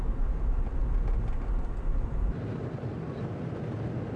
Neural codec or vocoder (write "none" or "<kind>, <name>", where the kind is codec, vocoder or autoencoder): none